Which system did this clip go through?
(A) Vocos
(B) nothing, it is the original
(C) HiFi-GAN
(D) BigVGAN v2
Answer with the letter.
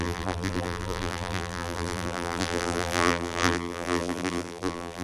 D